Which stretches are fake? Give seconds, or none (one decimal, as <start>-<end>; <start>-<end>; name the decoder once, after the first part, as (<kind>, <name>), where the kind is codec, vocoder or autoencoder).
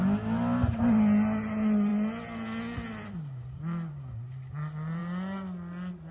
none